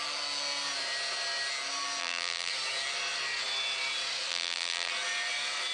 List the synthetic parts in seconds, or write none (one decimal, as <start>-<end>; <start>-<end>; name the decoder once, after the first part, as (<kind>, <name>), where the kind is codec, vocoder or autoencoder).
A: 2.0-2.5 (vocoder, BigVGAN v2); 4.3-4.9